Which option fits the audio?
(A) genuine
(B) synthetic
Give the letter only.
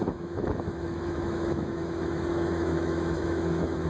B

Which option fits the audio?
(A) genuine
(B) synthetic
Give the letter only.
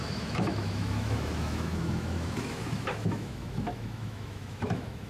B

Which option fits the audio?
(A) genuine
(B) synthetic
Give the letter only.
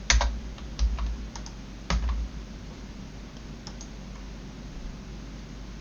A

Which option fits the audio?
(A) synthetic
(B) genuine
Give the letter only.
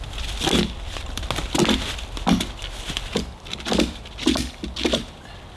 B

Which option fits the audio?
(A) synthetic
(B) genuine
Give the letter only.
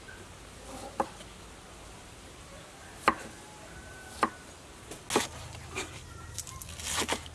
B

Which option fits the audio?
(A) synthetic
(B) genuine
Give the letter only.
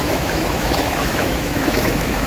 A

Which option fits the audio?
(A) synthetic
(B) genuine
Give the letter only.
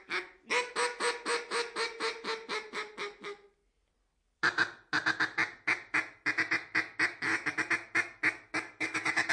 B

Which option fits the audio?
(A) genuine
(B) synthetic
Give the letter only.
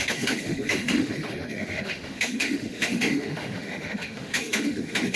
B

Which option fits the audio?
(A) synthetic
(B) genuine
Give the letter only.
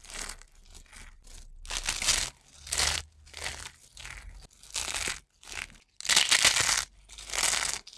B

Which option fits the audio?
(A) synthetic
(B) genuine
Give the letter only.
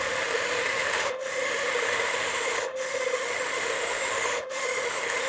A